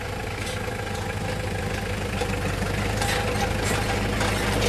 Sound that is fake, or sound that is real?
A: real